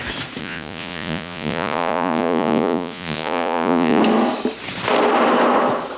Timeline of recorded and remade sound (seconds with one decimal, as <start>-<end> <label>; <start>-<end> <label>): 0.0-0.4 recorded; 0.4-4.0 remade; 4.0-6.0 recorded